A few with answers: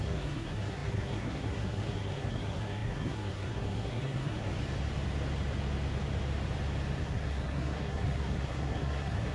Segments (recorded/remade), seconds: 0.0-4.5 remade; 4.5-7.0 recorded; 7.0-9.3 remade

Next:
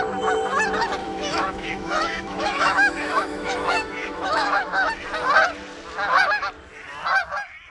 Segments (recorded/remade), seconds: 0.0-1.0 recorded; 1.0-4.9 remade; 4.9-7.7 recorded